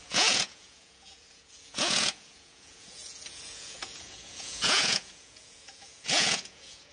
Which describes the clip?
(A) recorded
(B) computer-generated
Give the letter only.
B